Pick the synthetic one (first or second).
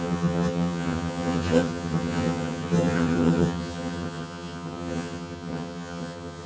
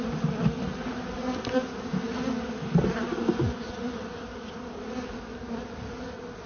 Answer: first